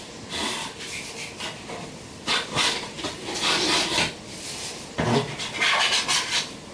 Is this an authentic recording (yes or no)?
yes